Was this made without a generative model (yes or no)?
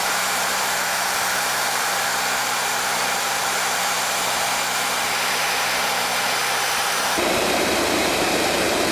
no